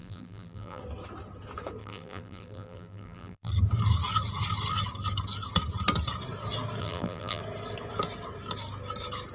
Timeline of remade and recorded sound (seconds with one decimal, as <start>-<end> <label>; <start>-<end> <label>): 0.0-0.8 remade; 0.8-1.8 recorded; 1.8-3.5 remade; 3.5-6.8 recorded; 6.8-7.4 remade; 7.4-9.3 recorded